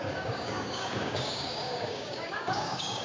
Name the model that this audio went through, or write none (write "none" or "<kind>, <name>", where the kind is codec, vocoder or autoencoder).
codec, DAC